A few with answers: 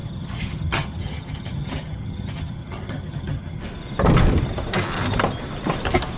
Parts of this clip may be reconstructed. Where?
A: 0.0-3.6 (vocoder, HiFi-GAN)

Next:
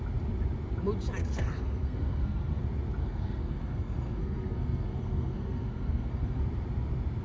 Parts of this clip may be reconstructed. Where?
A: 1.2-2.6 (codec, SNAC); 3.0-6.4

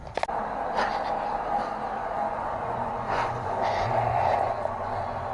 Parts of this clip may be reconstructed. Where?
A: 2.0-5.3 (vocoder, Vocos)